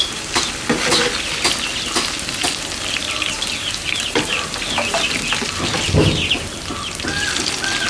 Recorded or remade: recorded